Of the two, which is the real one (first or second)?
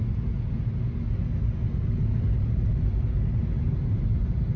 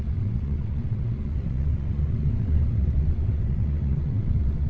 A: first